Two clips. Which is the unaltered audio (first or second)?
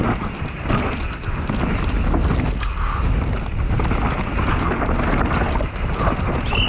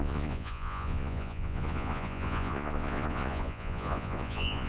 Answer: first